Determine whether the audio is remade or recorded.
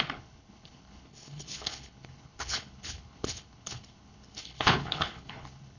remade